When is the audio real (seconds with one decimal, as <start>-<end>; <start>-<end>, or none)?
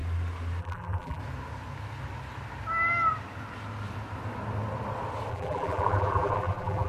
0.0-0.6; 1.2-5.3